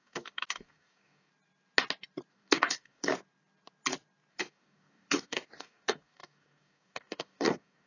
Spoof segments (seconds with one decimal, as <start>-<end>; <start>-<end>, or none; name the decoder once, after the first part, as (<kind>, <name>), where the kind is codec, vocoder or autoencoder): 0.0-1.3 (codec, DAC); 2.3-3.1; 4.3-7.9